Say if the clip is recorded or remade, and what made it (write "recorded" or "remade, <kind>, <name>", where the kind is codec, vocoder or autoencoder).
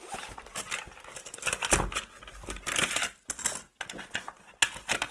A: recorded